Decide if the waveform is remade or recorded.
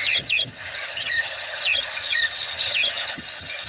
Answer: remade